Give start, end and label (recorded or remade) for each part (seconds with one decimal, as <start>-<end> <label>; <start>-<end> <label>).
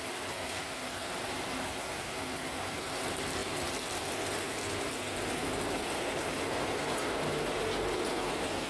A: 0.0-8.7 recorded